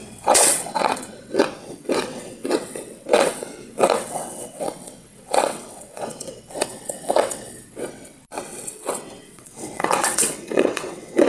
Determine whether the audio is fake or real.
fake